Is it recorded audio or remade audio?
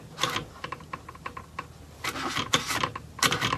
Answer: recorded